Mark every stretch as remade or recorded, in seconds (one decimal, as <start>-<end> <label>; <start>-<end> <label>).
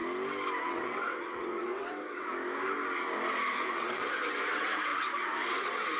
0.0-0.6 recorded; 0.6-2.3 remade; 2.3-3.7 recorded; 3.7-4.9 remade; 4.9-5.6 recorded; 5.6-6.0 remade